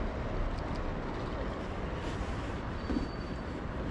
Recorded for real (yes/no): yes